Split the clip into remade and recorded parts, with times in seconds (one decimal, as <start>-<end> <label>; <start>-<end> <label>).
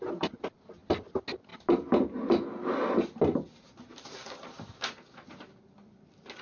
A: 0.0-6.4 recorded